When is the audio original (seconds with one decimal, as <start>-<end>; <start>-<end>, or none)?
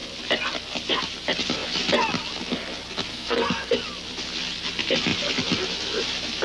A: 0.0-3.1; 3.7-6.4